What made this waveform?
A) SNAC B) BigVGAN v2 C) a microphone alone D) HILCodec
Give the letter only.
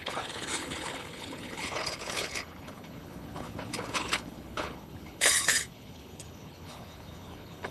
D